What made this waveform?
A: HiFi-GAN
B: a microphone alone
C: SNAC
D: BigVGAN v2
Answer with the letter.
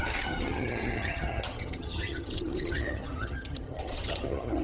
A